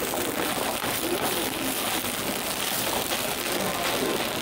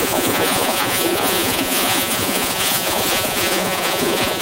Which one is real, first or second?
first